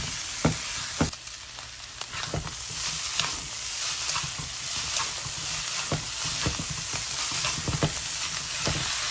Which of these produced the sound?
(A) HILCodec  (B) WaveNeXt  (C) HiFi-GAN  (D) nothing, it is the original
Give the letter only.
D